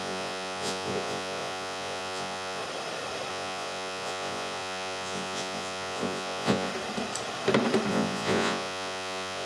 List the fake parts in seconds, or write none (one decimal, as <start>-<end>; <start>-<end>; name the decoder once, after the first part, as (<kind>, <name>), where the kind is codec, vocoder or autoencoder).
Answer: 0.0-2.6 (vocoder, Vocos); 3.3-6.7; 7.9-9.5